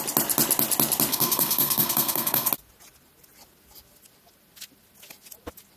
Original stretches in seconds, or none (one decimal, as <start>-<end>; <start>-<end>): 0.0-1.1; 2.5-5.8